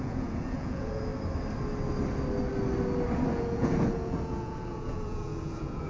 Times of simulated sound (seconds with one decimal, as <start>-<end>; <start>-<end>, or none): 0.0-1.1; 3.3-5.9